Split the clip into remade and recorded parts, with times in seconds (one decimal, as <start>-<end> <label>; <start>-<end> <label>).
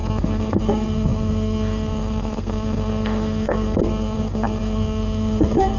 0.0-5.8 remade